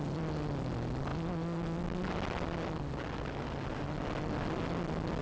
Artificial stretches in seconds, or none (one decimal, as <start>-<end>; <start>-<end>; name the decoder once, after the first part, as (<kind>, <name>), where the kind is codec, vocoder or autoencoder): none